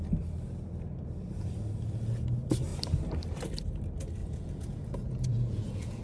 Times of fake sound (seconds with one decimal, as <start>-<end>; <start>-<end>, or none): 4.2-6.0